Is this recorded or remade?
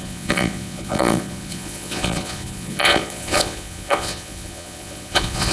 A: remade